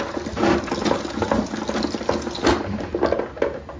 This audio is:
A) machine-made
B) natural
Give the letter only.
B